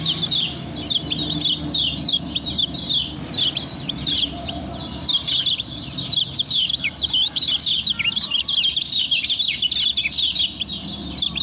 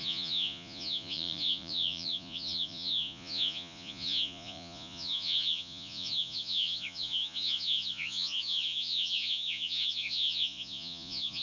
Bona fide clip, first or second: first